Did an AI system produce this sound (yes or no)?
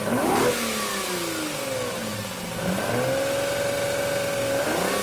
no